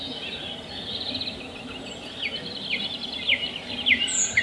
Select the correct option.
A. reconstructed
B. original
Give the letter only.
B